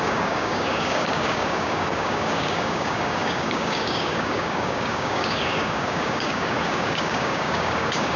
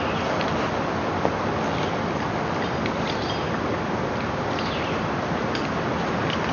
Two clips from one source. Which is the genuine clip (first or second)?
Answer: second